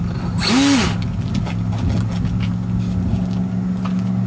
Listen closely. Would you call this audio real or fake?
real